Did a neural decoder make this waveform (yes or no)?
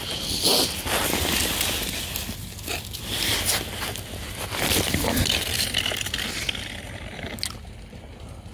no